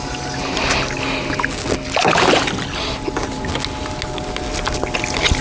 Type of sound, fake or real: real